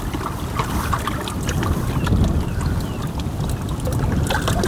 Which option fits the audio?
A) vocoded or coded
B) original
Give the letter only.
B